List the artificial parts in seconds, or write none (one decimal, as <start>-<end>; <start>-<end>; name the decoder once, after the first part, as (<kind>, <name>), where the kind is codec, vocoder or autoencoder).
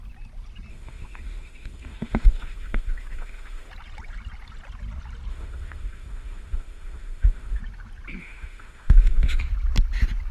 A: 0.7-3.7 (autoencoder, DAC-VAE); 5.3-7.6; 8.2-9.4